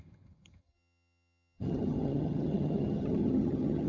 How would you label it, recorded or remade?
remade